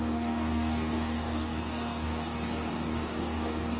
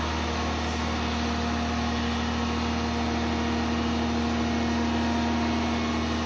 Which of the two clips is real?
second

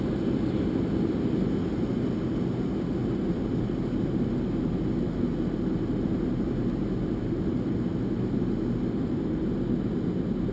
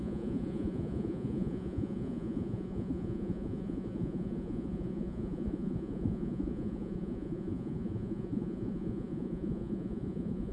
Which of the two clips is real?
first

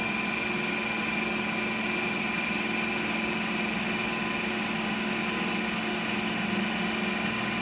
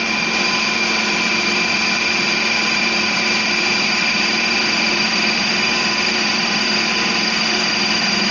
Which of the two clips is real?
first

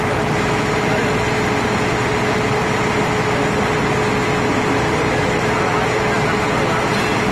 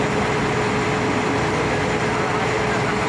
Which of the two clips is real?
first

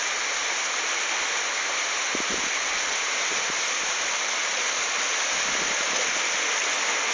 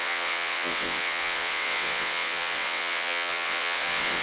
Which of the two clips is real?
first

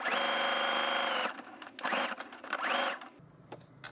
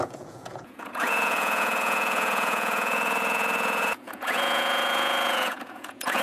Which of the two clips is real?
first